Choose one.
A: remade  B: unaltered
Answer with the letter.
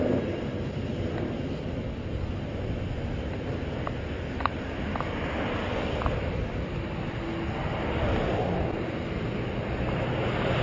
B